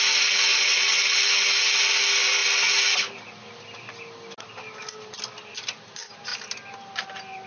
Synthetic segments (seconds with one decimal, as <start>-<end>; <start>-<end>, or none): 0.5-1.0